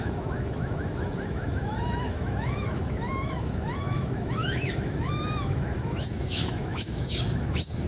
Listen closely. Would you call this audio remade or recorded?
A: remade